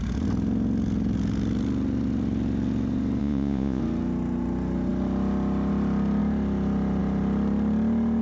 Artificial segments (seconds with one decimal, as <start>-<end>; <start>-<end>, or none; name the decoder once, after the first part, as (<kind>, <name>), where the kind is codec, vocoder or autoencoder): 3.2-3.8 (vocoder, Vocos)